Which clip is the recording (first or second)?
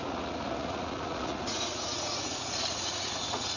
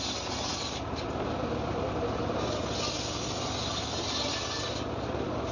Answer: second